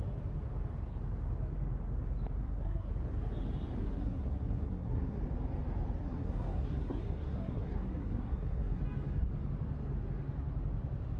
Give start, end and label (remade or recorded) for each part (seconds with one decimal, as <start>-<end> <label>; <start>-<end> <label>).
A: 0.0-2.4 recorded; 2.4-2.9 remade; 2.9-3.8 recorded; 3.8-5.2 remade; 5.2-6.0 recorded; 6.0-8.8 remade; 8.8-11.2 recorded